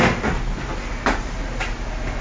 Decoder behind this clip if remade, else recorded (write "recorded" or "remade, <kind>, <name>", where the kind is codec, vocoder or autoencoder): recorded